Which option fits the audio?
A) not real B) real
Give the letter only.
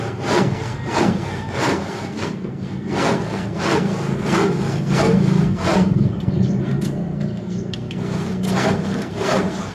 A